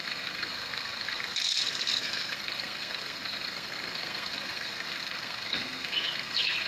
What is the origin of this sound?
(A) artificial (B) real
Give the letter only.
A